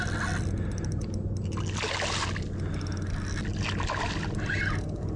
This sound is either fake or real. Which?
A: real